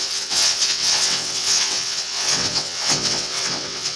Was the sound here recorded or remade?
remade